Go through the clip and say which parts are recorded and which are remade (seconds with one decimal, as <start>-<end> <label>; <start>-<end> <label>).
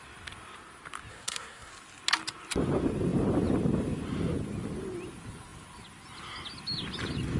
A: 0.0-1.1 recorded; 1.1-1.7 remade; 1.7-7.4 recorded